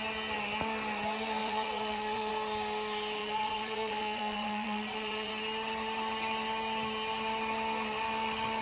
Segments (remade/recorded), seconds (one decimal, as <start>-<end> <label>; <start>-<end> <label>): 0.0-1.4 recorded; 1.4-2.3 remade; 2.3-3.2 recorded; 3.2-5.3 remade; 5.3-8.6 recorded